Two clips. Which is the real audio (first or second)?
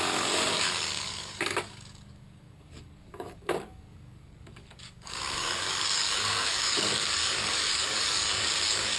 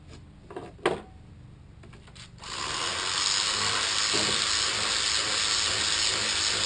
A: second